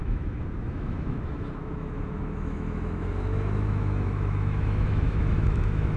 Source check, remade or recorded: remade